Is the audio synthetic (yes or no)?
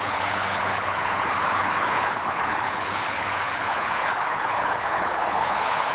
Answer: yes